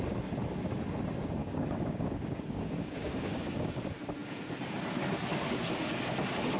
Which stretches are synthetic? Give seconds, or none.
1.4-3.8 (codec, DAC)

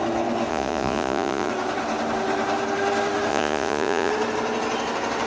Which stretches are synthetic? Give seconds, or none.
0.5-1.5 (vocoder, Vocos); 3.3-4.1

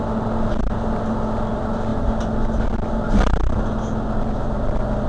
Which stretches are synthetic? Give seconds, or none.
none

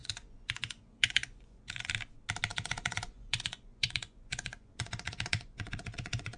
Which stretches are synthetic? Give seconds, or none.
0.0-1.9 (vocoder, Vocos); 2.5-6.4

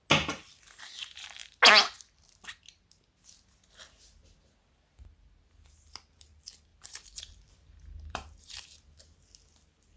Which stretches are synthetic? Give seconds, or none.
6.7-8.6 (vocoder, BigVGAN v2)

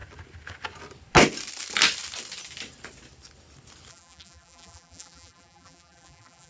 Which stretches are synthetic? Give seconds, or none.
3.9-6.5 (vocoder, BigVGAN v2)

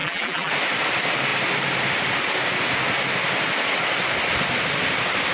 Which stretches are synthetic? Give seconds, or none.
0.0-0.5 (vocoder, BigVGAN v2)